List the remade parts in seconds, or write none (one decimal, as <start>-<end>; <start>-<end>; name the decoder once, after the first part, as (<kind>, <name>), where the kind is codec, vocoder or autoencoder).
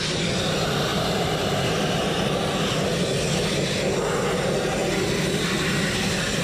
none